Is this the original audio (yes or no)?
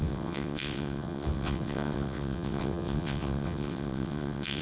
no